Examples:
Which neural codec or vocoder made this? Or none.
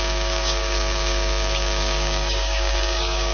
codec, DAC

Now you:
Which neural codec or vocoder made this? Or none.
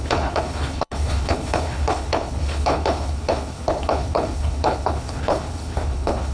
codec, HILCodec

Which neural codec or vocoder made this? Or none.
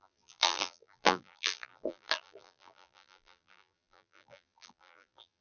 vocoder, BigVGAN v2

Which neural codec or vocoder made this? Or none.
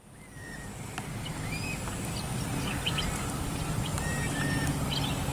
none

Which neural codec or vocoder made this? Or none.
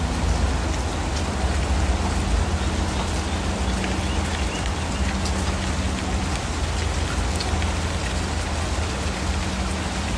none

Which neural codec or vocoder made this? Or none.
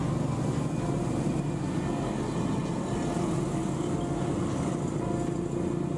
none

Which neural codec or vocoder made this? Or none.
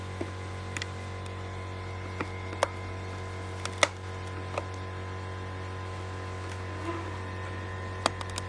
none